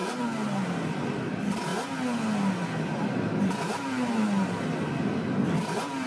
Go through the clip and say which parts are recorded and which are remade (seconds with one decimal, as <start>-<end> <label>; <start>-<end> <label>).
0.0-6.1 recorded